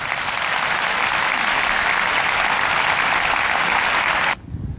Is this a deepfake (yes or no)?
no